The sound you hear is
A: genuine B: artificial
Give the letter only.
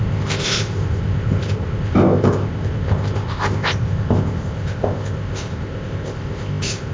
B